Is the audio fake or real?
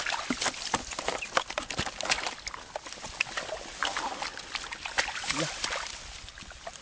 real